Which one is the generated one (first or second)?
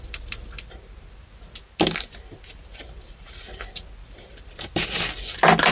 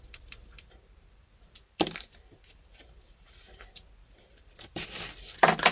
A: second